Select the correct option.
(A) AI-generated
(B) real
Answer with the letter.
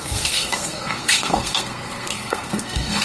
A